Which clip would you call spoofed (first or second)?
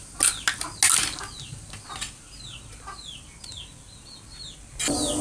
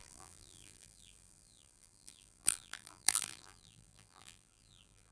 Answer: second